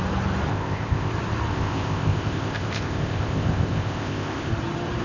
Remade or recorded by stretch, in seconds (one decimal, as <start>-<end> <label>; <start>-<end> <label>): 0.0-0.5 recorded; 0.5-1.1 remade; 1.1-1.5 recorded; 1.5-4.5 remade; 4.5-5.0 recorded